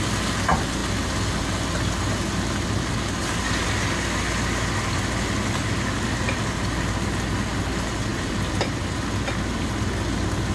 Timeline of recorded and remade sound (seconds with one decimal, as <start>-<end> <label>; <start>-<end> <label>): 0.0-10.5 recorded